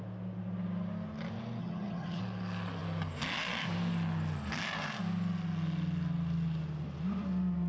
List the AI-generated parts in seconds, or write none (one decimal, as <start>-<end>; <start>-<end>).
1.6-2.2